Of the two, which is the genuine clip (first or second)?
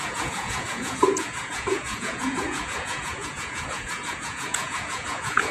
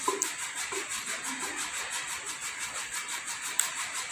second